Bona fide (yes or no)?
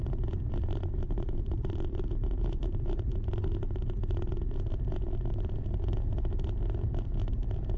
yes